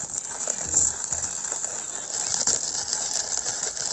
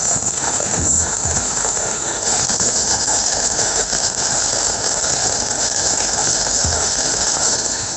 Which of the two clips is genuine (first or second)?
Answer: first